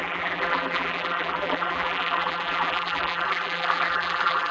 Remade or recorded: remade